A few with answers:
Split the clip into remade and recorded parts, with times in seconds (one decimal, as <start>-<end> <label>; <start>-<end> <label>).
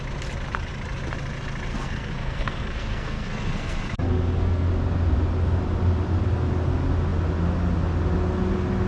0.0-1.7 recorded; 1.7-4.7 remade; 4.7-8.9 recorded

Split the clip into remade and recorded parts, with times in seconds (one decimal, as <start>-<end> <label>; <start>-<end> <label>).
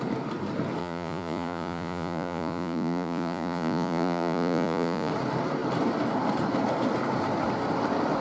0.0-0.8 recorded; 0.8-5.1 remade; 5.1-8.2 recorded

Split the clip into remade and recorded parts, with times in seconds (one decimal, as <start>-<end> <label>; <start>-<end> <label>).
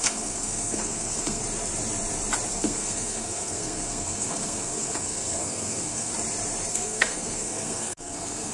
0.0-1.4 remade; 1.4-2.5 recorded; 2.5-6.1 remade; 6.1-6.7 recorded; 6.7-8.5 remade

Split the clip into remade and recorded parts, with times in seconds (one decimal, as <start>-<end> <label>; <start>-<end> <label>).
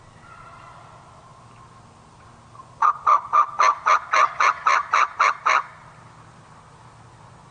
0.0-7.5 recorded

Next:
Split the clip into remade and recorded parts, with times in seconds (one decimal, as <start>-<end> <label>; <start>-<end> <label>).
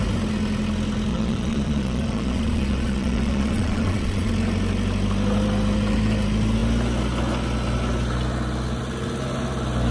0.0-1.1 recorded; 1.1-4.3 remade; 4.3-9.9 recorded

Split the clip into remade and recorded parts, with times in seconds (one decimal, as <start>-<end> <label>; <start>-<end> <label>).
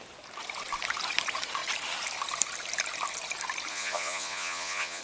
0.0-3.7 recorded; 3.7-5.0 remade